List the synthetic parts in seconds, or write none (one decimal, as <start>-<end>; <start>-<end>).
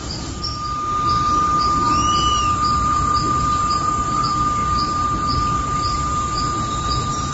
none